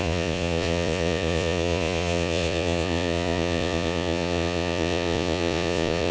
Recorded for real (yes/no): no